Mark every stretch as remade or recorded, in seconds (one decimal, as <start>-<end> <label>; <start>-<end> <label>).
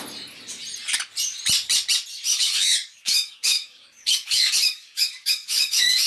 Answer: 0.0-2.3 recorded; 2.3-6.1 remade